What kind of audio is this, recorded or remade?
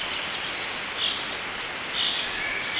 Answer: recorded